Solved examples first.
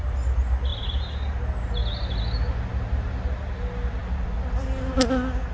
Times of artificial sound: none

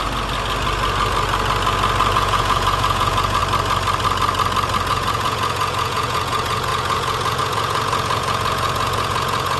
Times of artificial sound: 2.1-3.4; 4.9-9.6

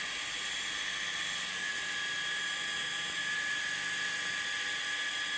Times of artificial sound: none

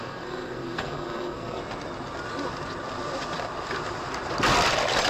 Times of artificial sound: 0.0-1.6